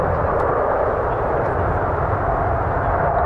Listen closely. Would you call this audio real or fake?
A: real